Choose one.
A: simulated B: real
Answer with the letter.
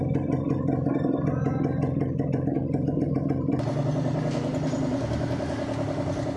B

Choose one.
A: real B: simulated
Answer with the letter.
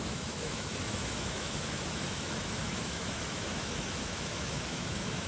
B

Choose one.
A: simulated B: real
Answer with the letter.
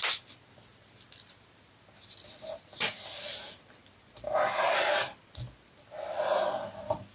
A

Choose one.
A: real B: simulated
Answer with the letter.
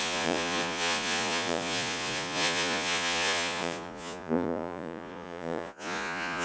B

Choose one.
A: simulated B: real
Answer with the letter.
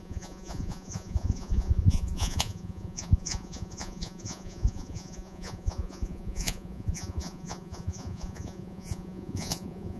A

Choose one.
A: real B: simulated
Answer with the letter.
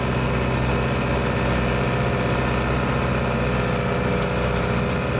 A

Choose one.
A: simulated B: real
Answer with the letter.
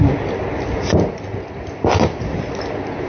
B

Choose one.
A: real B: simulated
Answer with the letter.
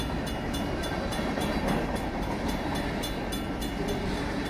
A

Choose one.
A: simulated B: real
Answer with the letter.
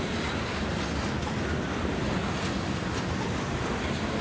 B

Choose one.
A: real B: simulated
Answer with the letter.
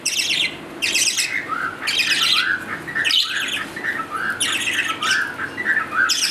A